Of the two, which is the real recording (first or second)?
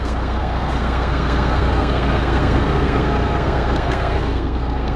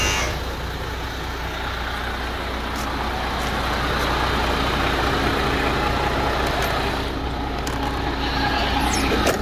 second